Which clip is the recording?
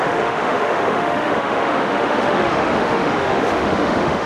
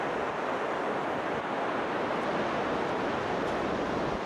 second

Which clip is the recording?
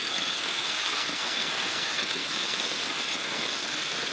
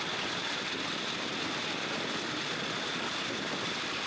second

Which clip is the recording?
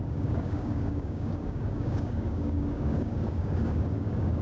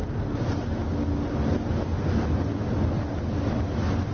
second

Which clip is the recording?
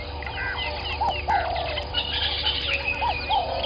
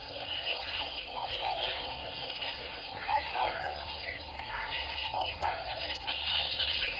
first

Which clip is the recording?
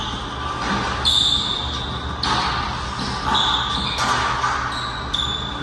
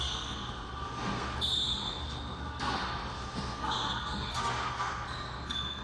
first